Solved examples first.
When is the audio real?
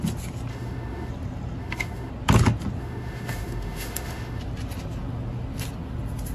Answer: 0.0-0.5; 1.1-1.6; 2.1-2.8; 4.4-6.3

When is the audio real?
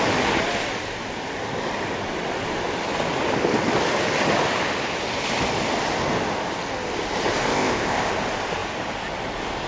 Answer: 0.0-7.5; 8.1-9.7